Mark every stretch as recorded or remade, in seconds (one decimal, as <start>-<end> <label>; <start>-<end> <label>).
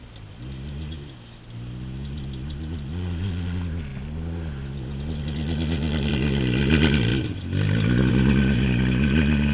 0.0-9.5 recorded